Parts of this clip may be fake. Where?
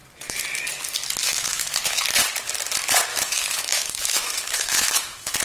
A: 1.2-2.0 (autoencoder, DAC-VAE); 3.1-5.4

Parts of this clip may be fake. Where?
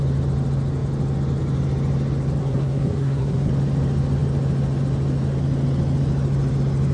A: 2.4-3.5 (codec, SNAC)